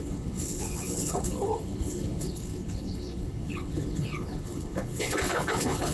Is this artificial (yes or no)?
yes